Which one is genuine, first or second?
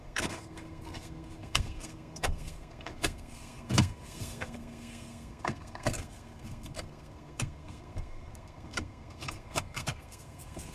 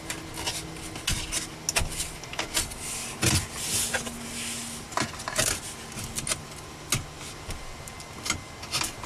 second